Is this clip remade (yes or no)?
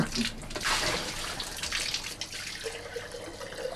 no